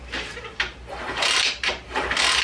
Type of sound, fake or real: fake